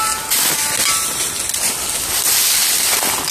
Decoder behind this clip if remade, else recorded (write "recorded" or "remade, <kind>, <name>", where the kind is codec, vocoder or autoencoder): recorded